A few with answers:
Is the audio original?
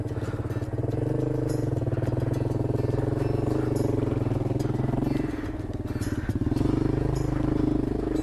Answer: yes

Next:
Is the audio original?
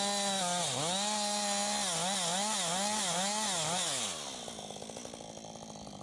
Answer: yes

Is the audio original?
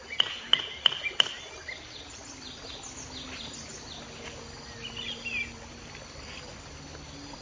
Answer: yes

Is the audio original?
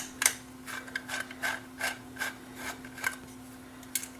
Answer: yes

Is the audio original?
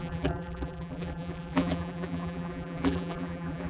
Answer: no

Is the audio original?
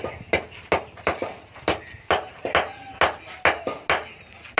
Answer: yes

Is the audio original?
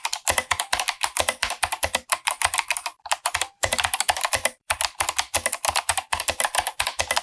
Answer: no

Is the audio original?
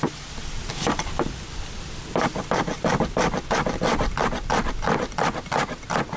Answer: yes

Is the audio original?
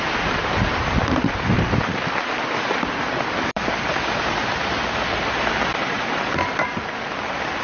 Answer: no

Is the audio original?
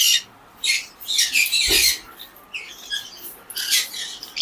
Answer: yes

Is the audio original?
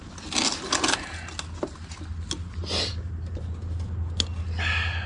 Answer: yes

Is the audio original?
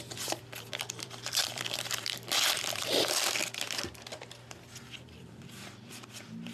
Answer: no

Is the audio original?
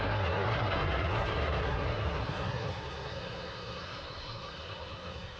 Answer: no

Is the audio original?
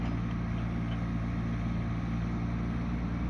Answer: yes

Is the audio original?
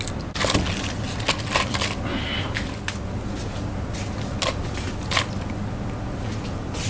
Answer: yes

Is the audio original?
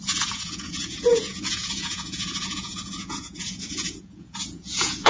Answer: no